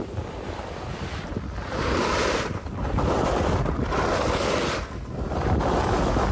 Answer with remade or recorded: recorded